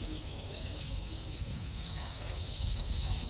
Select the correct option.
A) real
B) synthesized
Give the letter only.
B